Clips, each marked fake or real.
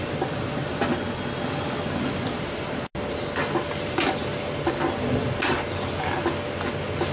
real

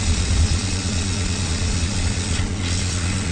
fake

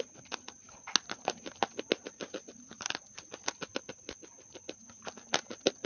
real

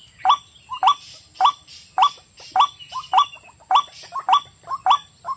real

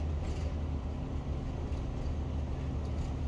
real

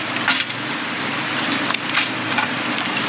fake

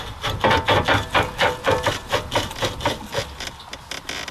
real